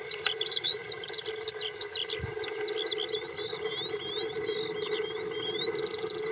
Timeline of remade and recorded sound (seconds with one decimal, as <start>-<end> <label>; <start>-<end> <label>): 0.0-6.3 recorded